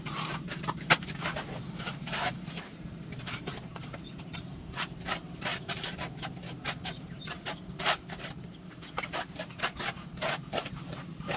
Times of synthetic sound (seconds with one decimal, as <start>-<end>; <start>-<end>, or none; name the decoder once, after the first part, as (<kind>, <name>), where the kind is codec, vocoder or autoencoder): 0.0-11.4 (vocoder, BigVGAN v2)